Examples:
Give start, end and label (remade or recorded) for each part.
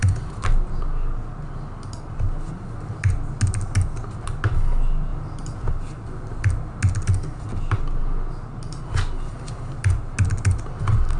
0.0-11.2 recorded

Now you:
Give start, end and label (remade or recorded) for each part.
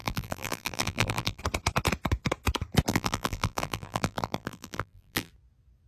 0.0-1.4 remade; 1.4-2.9 recorded; 2.9-5.3 remade; 5.3-5.9 recorded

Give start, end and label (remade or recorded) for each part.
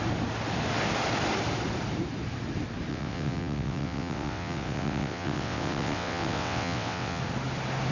0.0-2.9 recorded; 2.9-7.2 remade; 7.2-7.9 recorded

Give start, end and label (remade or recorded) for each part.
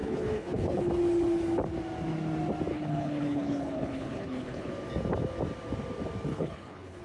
0.0-0.9 remade; 0.9-2.7 recorded; 2.7-4.7 remade; 4.7-6.3 recorded; 6.3-7.0 remade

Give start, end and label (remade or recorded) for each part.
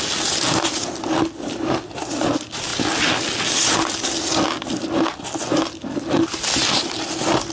0.0-7.5 recorded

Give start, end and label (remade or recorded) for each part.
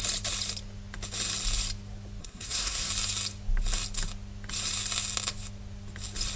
0.0-2.2 recorded; 2.2-2.9 remade; 2.9-6.4 recorded